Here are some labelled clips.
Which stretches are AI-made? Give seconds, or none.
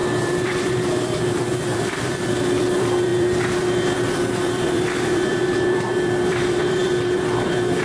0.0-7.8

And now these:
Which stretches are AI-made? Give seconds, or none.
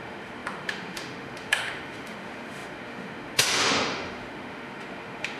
0.0-5.4